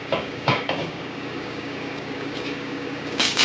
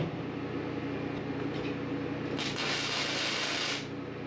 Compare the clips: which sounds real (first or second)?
second